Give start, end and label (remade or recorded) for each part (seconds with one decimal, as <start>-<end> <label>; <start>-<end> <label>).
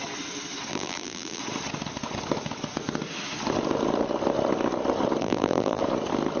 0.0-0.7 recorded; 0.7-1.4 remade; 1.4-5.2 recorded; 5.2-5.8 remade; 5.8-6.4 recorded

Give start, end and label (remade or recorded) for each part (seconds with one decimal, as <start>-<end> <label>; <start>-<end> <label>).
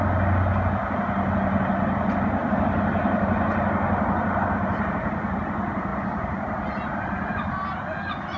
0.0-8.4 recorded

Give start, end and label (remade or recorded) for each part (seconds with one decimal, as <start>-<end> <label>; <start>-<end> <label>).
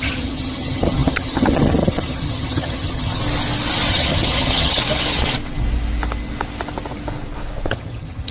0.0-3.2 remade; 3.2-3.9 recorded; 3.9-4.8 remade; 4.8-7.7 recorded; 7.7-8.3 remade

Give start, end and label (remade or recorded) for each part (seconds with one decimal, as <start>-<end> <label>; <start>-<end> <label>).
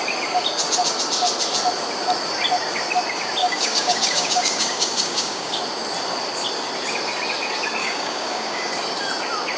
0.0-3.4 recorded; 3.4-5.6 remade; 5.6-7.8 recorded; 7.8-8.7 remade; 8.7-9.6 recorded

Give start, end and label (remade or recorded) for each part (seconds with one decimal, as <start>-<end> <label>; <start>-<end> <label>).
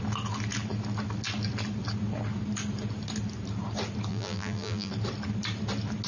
0.0-4.1 recorded; 4.1-4.9 remade; 4.9-6.1 recorded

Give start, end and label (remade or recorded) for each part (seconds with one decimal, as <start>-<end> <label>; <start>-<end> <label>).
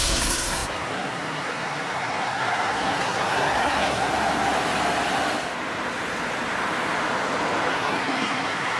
0.0-4.1 remade; 4.1-7.7 recorded; 7.7-8.8 remade